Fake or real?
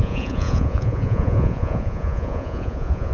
fake